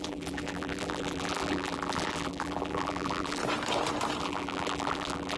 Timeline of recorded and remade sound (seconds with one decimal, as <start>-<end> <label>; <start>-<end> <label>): 0.0-3.4 remade; 3.4-4.2 recorded; 4.2-5.4 remade